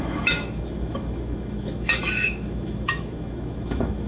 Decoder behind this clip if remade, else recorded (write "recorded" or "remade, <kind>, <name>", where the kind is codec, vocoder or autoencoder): remade, autoencoder, DAC-VAE